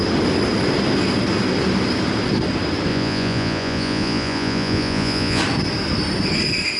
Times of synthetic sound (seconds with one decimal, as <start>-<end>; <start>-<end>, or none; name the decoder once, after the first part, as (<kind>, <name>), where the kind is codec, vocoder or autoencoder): 2.9-5.4 (vocoder, Vocos)